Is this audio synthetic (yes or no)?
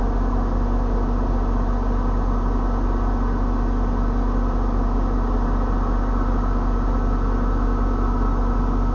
no